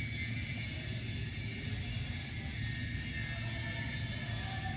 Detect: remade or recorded recorded